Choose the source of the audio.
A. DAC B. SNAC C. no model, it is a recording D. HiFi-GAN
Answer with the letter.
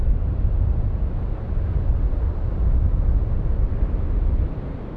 C